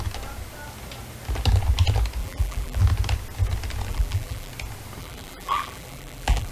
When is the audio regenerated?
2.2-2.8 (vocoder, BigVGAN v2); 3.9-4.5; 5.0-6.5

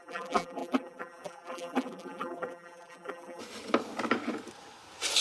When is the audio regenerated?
0.0-3.4 (vocoder, BigVGAN v2)